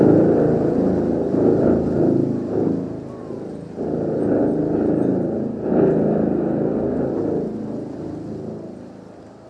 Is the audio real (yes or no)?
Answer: yes